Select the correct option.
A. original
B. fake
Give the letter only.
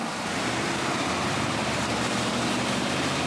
B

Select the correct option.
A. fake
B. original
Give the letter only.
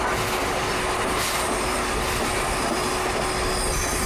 B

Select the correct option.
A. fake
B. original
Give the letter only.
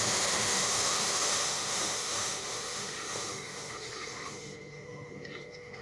A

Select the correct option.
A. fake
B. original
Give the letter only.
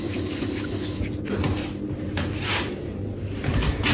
B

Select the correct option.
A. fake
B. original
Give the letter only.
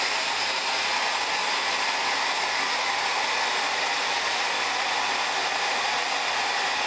B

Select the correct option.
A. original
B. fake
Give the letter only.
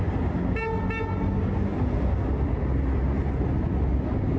A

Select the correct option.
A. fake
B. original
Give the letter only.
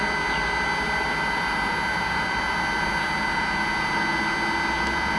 B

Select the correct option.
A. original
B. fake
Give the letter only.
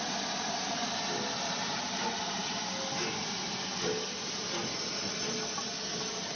A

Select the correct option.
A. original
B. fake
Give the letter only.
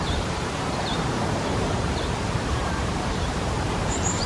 B